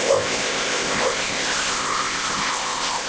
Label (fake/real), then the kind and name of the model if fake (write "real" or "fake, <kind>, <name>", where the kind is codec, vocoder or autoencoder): fake, codec, ZipCodec